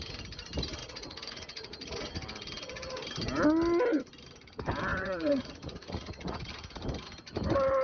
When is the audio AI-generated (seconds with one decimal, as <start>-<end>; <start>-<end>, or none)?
0.8-2.1; 4.9-6.5